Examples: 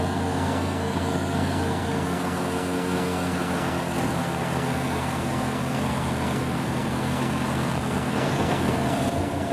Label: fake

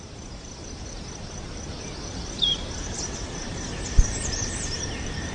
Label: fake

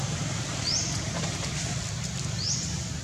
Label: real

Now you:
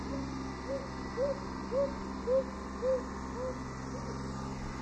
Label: real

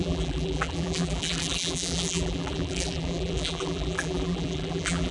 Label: fake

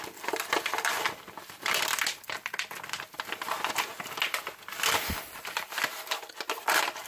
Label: fake